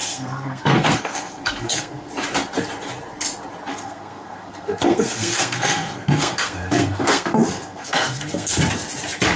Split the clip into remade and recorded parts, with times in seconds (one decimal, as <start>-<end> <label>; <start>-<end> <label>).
0.0-2.1 remade; 2.1-3.7 recorded; 3.7-8.6 remade; 8.6-9.4 recorded